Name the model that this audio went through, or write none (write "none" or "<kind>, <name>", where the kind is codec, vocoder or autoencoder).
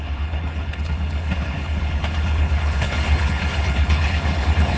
codec, HILCodec